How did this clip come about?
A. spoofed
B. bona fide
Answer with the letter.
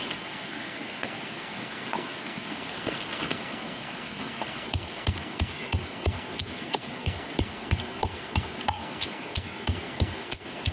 A